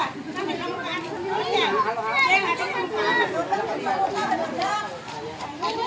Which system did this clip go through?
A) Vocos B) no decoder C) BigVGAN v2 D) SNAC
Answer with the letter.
B